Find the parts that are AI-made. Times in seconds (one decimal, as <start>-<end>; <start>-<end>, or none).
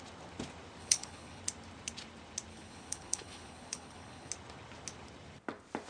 0.8-1.4; 2.5-4.3